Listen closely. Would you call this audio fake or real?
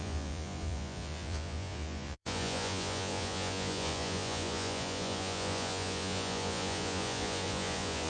fake